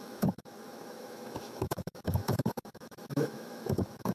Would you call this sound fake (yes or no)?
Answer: yes